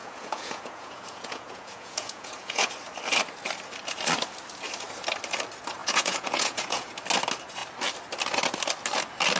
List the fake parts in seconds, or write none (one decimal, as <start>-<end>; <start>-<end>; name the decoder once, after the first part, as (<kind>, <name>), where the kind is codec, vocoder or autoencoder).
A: 0.0-2.7 (vocoder, Vocos); 5.8-7.0